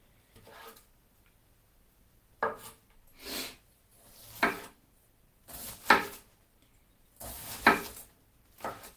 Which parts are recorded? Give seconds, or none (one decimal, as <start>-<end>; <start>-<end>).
0.0-9.0